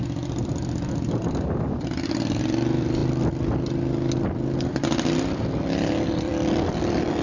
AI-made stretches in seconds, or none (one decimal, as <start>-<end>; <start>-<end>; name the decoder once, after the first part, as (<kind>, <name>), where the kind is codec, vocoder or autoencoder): 0.0-7.2 (vocoder, BigVGAN v2)